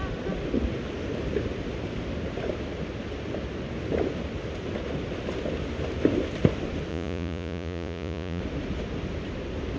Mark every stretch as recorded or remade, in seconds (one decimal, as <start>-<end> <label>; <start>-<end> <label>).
0.0-6.9 recorded; 6.9-8.4 remade; 8.4-9.8 recorded